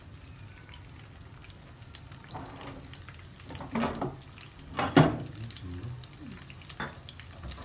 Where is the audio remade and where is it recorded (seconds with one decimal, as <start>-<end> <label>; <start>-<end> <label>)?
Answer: 0.0-7.6 recorded